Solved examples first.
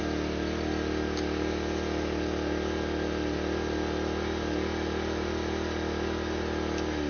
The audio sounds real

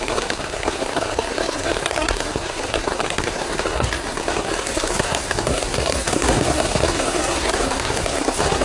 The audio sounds fake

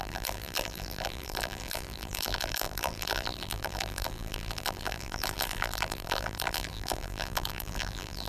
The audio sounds fake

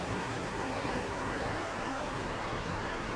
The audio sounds fake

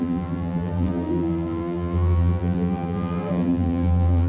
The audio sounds fake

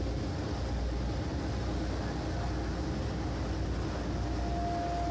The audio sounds real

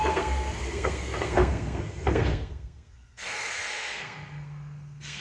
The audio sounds fake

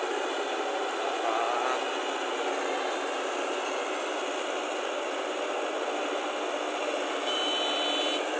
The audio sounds real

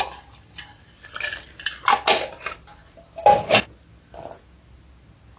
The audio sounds real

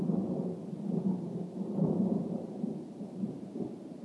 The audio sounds fake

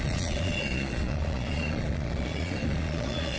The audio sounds fake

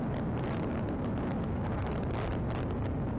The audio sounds real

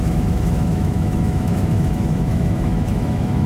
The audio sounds fake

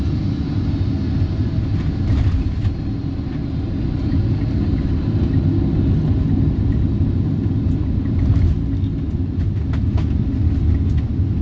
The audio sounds real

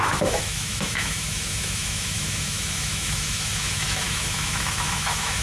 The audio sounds fake